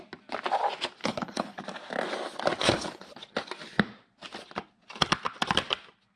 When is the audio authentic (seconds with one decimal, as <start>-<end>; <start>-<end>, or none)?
0.0-1.0; 1.6-2.6; 3.2-6.2